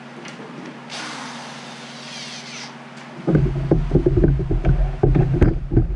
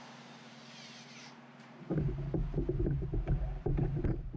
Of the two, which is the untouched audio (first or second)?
first